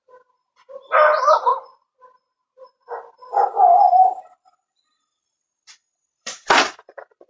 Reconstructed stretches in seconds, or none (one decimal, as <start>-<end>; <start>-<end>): 3.7-7.3